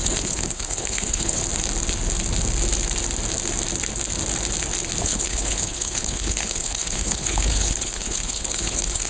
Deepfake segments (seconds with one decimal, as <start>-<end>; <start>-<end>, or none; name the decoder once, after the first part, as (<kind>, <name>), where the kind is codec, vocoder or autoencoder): 0.0-1.4 (codec, HILCodec); 5.0-9.1